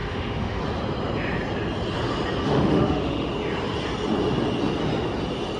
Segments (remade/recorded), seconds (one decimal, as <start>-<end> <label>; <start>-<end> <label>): 0.0-0.6 remade; 0.6-2.4 recorded; 2.4-3.3 remade; 3.3-5.6 recorded